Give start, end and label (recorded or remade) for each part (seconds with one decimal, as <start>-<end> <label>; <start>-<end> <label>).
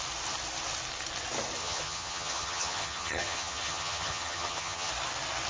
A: 0.0-1.6 recorded; 1.6-4.9 remade; 4.9-5.5 recorded